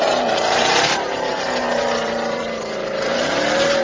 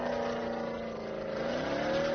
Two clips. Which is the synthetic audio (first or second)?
first